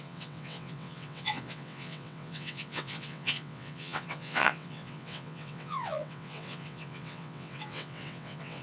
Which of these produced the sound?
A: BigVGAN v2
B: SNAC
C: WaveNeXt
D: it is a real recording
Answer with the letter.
C